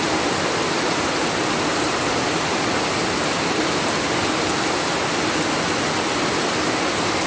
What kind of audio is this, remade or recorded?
recorded